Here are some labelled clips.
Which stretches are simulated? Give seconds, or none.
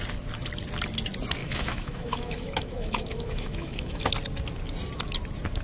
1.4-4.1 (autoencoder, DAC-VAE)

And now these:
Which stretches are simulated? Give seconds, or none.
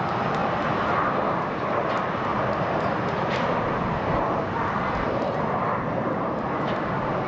none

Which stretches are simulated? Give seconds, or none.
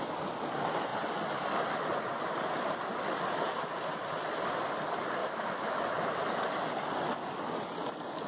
5.2-6.2 (autoencoder, DAC-VAE)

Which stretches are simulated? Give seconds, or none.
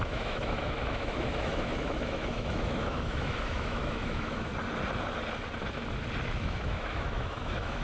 0.0-4.5 (autoencoder, DAC-VAE); 6.4-7.8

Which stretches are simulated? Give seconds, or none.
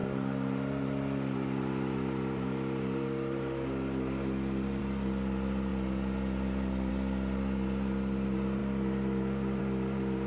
none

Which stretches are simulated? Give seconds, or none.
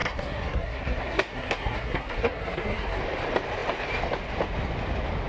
0.0-3.0 (codec, SNAC)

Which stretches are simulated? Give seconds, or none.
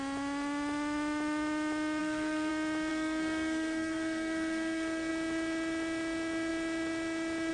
2.0-2.5 (codec, SNAC); 2.9-5.1